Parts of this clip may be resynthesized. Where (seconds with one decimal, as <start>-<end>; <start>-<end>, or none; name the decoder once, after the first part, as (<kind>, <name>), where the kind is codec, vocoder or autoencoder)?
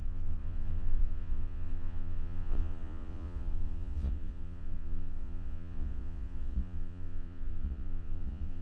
0.0-8.6 (vocoder, Vocos)